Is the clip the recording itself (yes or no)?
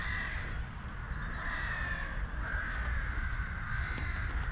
yes